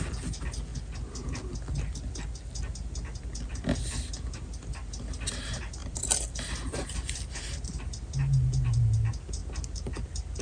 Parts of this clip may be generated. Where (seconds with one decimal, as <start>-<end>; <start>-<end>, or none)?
5.8-7.4; 9.4-10.4